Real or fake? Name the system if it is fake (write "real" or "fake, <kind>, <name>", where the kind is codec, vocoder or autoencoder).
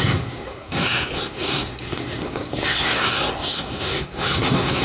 fake, codec, SNAC